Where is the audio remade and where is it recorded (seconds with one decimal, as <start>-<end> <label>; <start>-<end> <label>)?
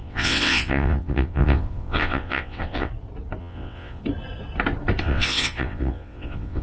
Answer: 0.0-2.9 remade; 2.9-3.4 recorded; 3.4-4.0 remade; 4.0-5.0 recorded; 5.0-6.6 remade